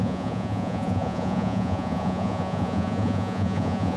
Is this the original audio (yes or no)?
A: no